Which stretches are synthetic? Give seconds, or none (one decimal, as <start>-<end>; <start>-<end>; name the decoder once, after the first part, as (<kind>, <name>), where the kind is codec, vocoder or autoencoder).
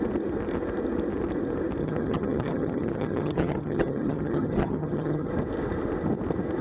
1.8-5.3 (vocoder, HiFi-GAN)